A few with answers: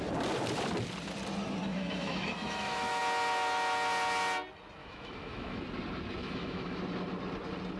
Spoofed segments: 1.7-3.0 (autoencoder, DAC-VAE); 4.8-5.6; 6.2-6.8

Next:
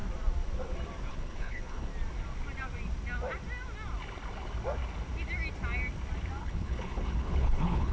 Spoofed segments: 1.1-1.9 (codec, HILCodec); 6.4-7.9

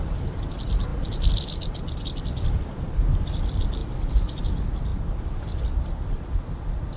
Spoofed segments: none